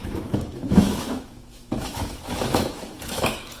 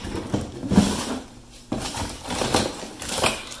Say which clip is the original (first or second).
second